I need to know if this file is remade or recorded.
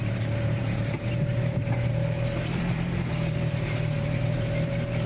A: remade